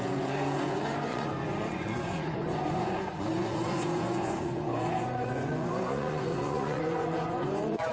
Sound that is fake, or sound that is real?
fake